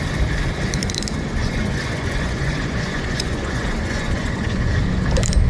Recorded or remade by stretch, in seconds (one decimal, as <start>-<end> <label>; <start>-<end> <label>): 0.0-1.4 recorded; 1.4-4.7 remade; 4.7-5.5 recorded